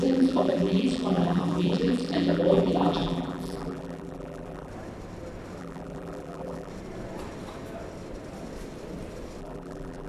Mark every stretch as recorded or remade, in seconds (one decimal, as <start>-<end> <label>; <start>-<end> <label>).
0.0-4.7 remade; 4.7-5.6 recorded; 5.6-6.7 remade; 6.7-9.4 recorded; 9.4-10.1 remade

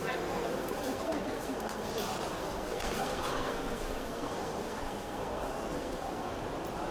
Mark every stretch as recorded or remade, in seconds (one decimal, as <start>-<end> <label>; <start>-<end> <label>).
0.0-1.9 remade; 1.9-2.3 recorded; 2.3-6.4 remade; 6.4-6.9 recorded